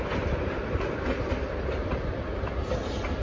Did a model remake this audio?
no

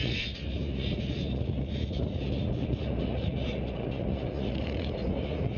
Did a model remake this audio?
yes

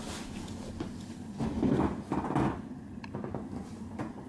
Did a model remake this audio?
no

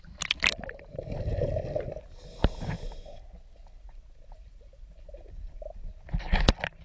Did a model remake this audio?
no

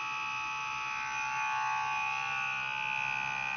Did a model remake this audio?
no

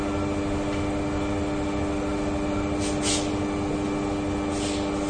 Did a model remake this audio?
no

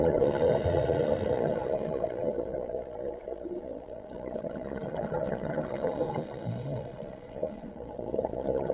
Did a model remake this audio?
yes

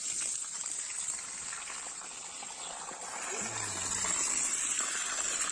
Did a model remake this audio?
no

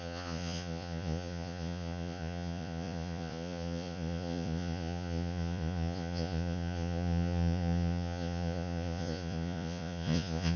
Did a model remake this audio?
yes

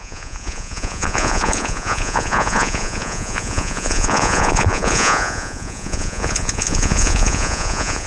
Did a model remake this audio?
yes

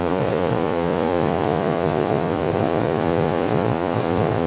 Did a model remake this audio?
yes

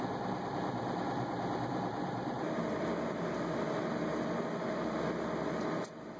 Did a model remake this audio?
no